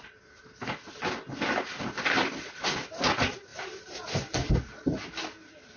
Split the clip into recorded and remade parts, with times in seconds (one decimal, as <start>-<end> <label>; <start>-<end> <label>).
0.0-5.8 recorded